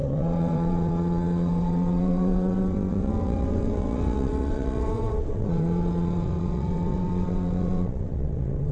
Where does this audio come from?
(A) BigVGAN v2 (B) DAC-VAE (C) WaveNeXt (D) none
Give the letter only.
C